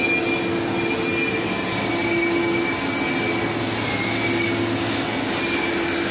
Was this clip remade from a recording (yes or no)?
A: no